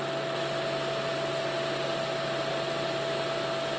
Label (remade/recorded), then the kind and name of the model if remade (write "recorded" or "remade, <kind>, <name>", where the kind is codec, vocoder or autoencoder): recorded